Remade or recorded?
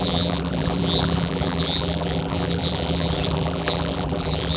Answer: remade